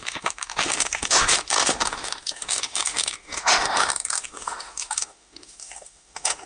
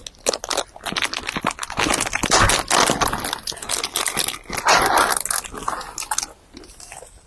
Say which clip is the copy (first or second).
first